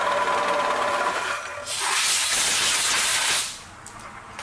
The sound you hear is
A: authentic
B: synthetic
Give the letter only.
A